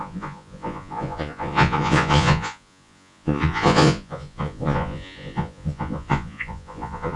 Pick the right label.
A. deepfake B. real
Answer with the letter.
A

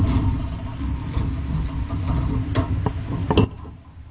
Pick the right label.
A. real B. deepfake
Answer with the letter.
A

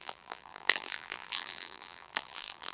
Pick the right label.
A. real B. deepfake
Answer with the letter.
B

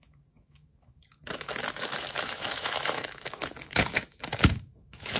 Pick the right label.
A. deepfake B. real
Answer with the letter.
A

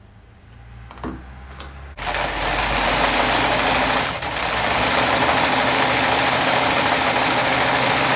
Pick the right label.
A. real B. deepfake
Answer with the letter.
A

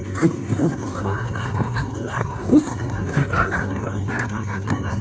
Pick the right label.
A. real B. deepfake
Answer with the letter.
B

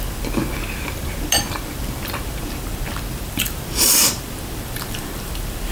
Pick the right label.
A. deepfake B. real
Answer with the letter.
A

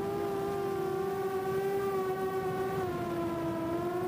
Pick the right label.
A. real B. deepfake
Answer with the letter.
A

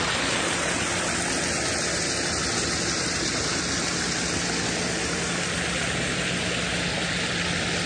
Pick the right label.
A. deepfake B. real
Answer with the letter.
B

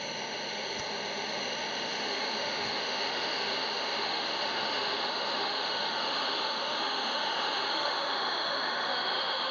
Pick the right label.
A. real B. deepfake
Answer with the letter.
B